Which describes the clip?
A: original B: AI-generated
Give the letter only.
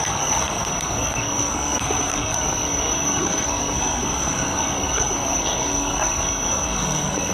B